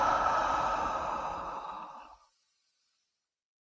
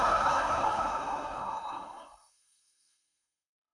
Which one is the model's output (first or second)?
second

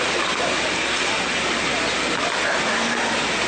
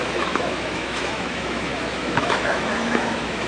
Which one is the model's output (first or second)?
second